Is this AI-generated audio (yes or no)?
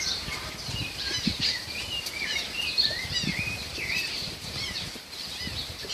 yes